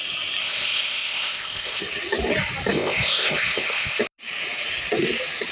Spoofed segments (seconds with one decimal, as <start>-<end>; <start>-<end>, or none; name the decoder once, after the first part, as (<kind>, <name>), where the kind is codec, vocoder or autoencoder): 0.4-1.8 (codec, ZipCodec); 2.7-4.0